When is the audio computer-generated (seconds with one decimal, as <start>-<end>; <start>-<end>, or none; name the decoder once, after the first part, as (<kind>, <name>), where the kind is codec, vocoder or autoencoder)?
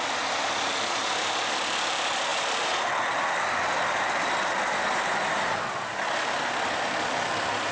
none